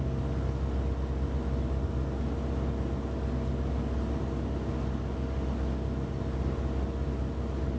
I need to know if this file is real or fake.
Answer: real